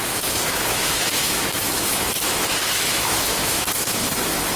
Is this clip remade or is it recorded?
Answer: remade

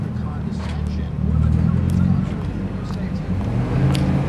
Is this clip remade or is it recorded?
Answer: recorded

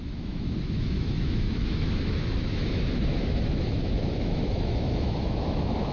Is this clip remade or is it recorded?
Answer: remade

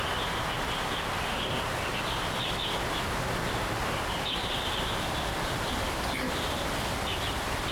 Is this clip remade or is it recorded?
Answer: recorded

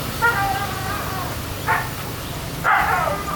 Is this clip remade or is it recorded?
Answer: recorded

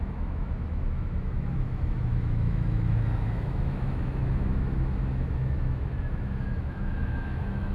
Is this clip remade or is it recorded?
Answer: remade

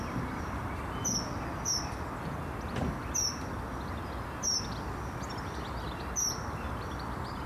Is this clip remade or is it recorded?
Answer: recorded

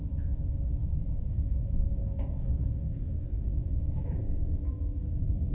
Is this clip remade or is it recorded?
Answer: remade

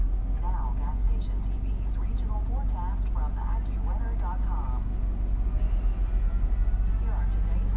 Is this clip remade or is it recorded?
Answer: recorded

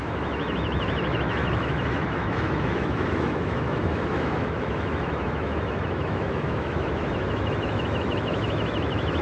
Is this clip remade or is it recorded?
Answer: remade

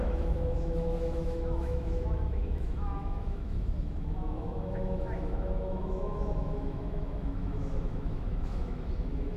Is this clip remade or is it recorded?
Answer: remade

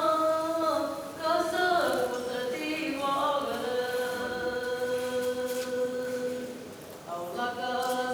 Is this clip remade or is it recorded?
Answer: recorded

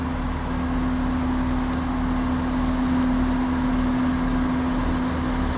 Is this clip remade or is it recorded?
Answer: recorded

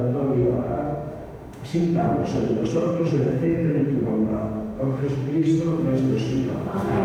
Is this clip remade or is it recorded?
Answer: remade